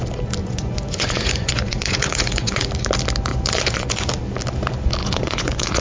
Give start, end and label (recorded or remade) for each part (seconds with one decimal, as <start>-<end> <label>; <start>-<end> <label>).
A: 0.0-0.4 recorded; 0.4-2.7 remade; 2.7-3.3 recorded; 3.3-4.1 remade; 4.1-5.0 recorded; 5.0-5.8 remade